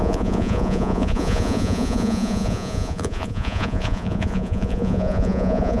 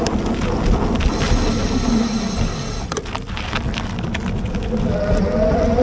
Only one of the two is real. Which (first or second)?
second